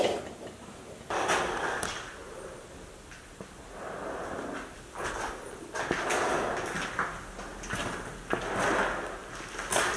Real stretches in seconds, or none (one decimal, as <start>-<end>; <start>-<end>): 0.0-10.0